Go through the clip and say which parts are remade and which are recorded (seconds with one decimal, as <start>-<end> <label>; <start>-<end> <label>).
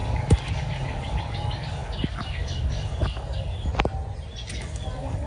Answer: 0.0-3.7 remade; 3.7-4.5 recorded; 4.5-5.3 remade